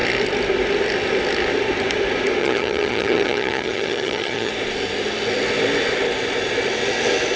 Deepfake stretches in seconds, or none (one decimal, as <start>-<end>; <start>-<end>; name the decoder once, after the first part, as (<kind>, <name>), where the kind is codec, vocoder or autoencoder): 2.4-4.5 (vocoder, HiFi-GAN)